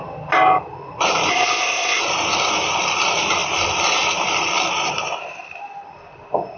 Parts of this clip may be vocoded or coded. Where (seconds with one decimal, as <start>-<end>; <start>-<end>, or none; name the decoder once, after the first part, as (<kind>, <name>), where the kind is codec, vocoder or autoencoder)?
1.3-2.0 (codec, ZipCodec)